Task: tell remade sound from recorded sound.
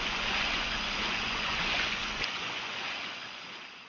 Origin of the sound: remade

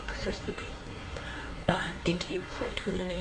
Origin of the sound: remade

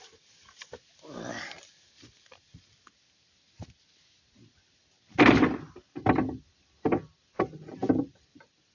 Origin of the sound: recorded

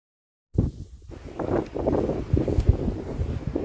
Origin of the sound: remade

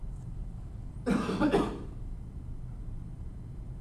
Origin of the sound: remade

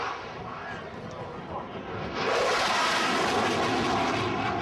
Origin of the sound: recorded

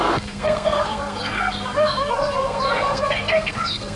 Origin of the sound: remade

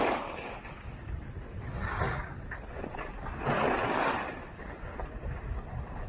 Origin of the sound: recorded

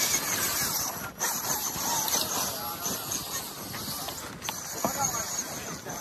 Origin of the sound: recorded